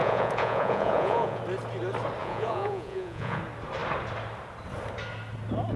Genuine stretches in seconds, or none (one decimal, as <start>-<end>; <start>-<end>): 1.4-2.2; 3.4-5.8